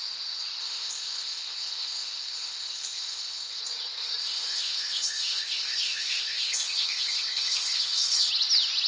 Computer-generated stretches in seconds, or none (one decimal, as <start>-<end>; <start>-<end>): 0.6-3.6; 4.2-8.3